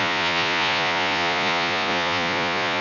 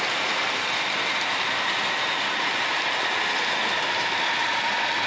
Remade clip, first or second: first